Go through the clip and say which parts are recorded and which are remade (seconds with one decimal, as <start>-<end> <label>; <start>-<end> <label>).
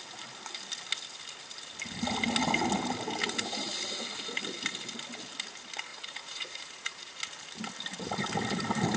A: 0.0-5.9 recorded; 5.9-7.2 remade; 7.2-9.0 recorded